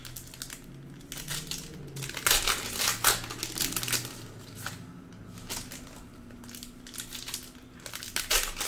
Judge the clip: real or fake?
real